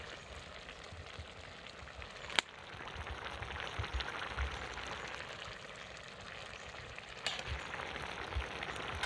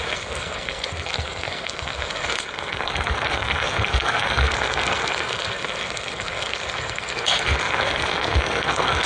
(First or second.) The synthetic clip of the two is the second